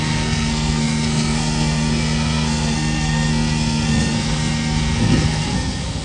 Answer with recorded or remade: remade